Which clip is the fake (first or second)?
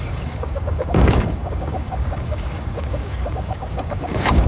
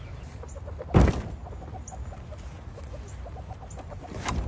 first